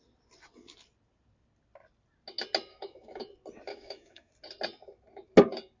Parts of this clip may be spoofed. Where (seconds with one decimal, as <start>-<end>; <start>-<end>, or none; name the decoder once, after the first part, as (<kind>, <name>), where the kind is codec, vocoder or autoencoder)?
2.7-3.2 (autoencoder, DAC-VAE); 3.7-4.3